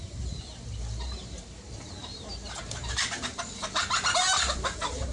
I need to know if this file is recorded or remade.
remade